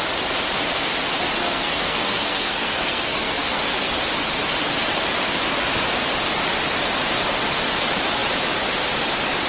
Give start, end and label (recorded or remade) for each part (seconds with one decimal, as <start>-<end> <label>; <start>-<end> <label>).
0.0-1.4 recorded; 1.4-3.9 remade; 3.9-9.5 recorded